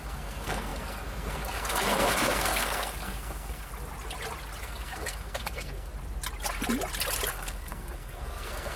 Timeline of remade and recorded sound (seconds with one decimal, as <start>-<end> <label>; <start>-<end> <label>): 0.0-3.7 remade; 3.7-4.6 recorded; 4.6-5.9 remade; 5.9-7.3 recorded; 7.3-8.8 remade